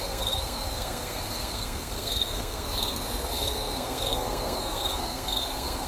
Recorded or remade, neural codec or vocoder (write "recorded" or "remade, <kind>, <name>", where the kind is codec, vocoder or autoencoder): remade, codec, SNAC